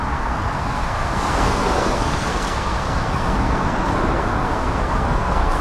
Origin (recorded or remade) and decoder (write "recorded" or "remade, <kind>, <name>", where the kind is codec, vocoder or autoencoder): remade, codec, SNAC